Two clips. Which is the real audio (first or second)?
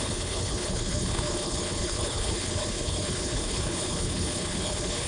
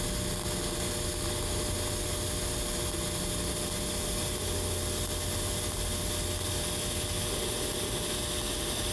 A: second